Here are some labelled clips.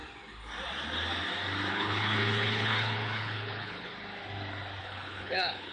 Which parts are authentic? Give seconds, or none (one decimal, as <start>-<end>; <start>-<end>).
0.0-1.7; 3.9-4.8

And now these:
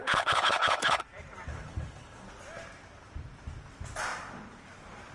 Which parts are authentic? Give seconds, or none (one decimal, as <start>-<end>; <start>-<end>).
1.0-1.5; 2.3-5.1

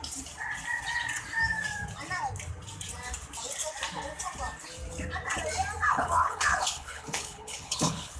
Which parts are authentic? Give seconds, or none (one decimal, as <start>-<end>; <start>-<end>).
0.0-5.9